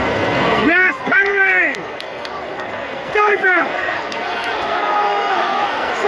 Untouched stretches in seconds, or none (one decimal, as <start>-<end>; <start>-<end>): none